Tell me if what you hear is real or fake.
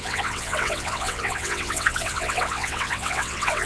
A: fake